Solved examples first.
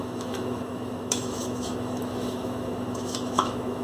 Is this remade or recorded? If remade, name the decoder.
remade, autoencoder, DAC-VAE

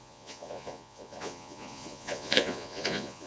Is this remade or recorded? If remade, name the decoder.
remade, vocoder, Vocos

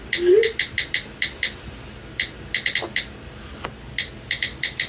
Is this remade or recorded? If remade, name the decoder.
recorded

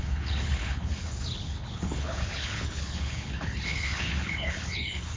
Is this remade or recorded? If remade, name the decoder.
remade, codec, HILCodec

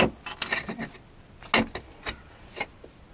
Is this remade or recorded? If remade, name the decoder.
recorded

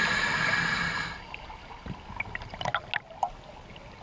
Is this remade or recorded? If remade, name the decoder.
recorded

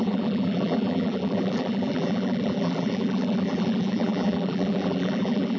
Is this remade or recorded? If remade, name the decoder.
remade, vocoder, BigVGAN v2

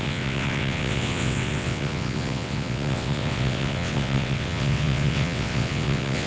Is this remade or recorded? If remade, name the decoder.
remade, vocoder, WaveNeXt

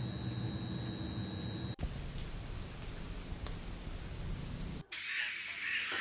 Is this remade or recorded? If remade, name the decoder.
recorded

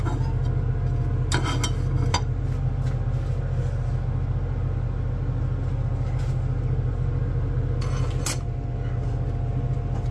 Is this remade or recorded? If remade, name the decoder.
recorded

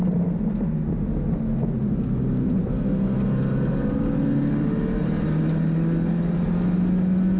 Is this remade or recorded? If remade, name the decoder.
recorded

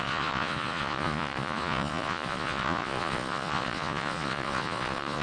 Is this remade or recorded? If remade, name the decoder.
remade, vocoder, Vocos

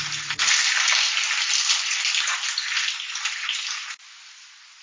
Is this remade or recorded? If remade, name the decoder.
recorded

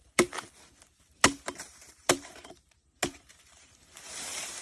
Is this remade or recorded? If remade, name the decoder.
remade, vocoder, BigVGAN v2